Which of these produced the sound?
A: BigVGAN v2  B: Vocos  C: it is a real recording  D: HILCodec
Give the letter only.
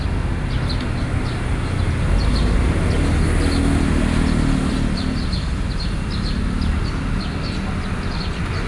C